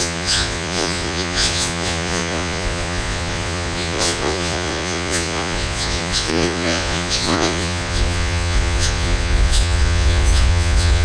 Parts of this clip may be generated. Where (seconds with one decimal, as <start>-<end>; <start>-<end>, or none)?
0.0-11.0